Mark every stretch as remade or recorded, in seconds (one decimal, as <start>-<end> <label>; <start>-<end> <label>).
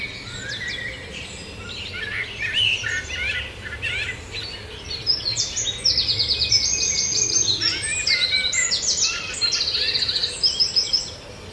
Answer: 0.0-11.5 recorded